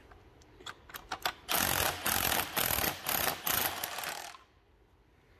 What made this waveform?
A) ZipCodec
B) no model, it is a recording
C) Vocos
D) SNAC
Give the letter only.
B